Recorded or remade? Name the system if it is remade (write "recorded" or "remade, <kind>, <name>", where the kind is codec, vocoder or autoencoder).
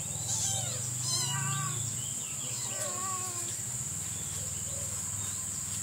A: recorded